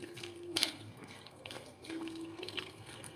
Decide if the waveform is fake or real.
fake